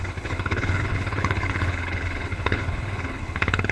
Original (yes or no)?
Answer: no